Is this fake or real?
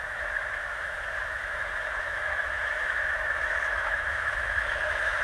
fake